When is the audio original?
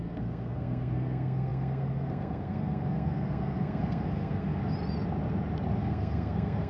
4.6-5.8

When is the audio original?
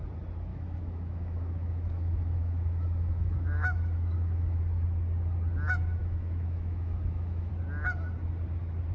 0.0-0.5; 4.6-6.0; 7.5-8.9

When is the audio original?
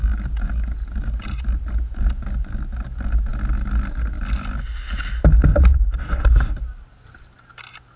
1.4-5.5; 6.0-8.0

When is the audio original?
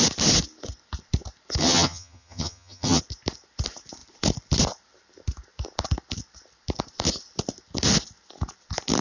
0.0-1.6; 3.0-9.0